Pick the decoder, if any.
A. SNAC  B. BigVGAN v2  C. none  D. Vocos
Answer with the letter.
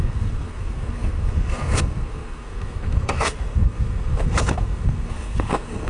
A